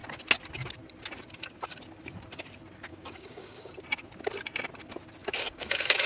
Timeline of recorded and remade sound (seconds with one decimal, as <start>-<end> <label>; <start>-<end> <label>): 0.0-2.9 recorded; 2.9-3.7 remade; 3.7-5.2 recorded; 5.2-6.1 remade